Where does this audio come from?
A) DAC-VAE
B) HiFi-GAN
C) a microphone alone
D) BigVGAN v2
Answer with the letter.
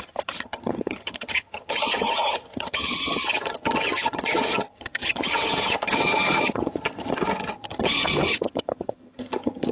B